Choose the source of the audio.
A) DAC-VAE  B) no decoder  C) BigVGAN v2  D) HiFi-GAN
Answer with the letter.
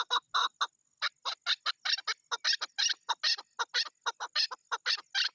B